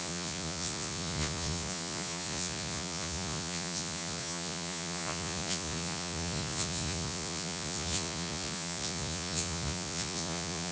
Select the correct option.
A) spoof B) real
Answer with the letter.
A